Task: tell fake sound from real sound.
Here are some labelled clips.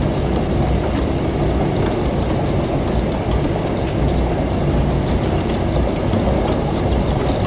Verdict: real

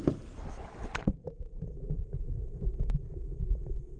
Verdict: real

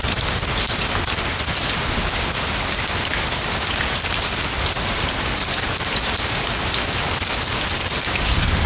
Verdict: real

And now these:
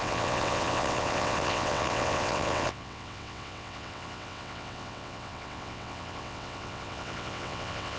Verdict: fake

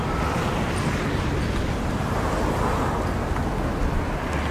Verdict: real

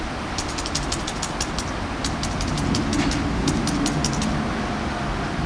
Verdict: real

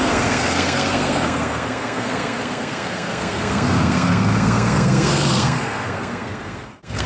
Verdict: fake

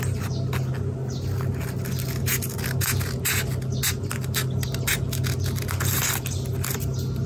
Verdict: real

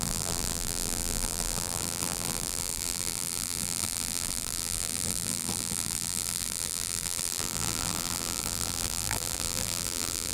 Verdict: fake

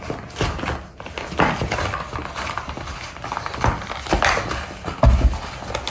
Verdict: real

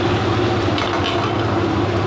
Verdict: real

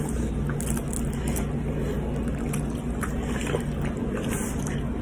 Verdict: real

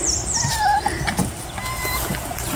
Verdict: real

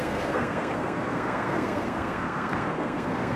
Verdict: fake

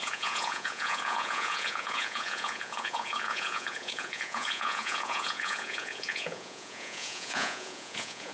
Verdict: fake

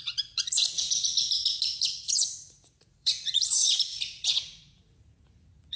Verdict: fake